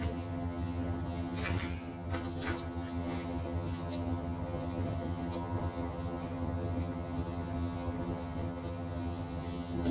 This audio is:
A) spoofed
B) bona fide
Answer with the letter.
A